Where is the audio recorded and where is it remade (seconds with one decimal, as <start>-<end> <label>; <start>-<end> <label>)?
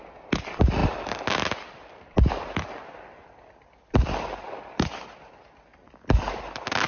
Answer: 0.0-6.9 recorded